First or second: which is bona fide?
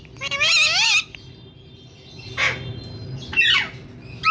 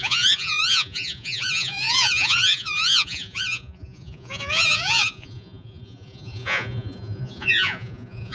first